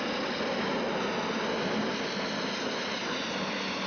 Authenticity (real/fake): real